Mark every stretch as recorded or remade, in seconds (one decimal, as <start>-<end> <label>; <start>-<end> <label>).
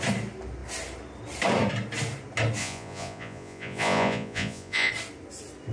0.0-2.6 recorded; 2.6-4.9 remade; 4.9-5.7 recorded